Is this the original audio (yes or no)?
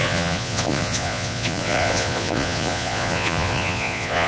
no